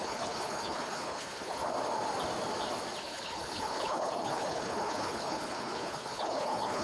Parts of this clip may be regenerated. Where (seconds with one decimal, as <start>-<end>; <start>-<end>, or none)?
0.0-1.6; 3.0-6.8